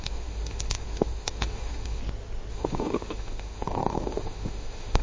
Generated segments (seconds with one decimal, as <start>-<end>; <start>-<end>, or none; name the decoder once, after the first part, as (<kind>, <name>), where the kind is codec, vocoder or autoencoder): 0.0-2.0 (autoencoder, DAC-VAE); 2.5-5.0